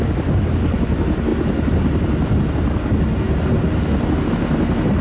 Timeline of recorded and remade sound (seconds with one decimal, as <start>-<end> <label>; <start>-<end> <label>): 0.0-5.0 recorded